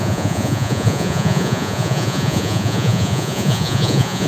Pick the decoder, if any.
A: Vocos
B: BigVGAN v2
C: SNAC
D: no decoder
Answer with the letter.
A